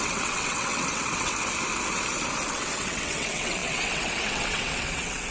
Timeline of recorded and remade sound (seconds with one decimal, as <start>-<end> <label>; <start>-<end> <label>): 0.0-1.3 remade; 1.3-2.5 recorded; 2.5-5.3 remade